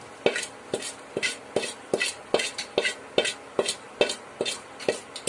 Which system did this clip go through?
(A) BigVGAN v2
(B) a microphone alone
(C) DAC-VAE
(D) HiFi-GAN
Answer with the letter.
B